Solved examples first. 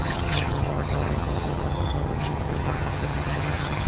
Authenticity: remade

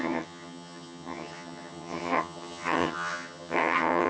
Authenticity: remade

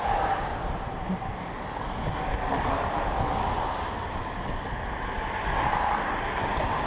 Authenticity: recorded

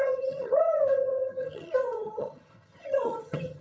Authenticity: remade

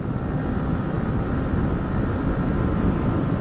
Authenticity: recorded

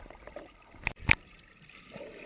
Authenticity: recorded